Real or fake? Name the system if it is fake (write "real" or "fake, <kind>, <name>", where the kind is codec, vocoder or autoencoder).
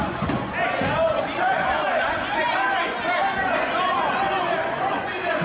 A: fake, vocoder, Vocos